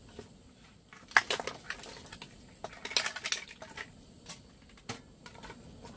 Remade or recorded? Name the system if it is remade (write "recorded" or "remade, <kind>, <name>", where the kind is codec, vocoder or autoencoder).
recorded